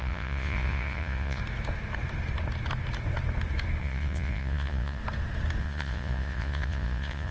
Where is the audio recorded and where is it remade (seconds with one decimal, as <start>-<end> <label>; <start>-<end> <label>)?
0.0-1.4 remade; 1.4-3.8 recorded; 3.8-5.0 remade; 5.0-5.6 recorded; 5.6-7.3 remade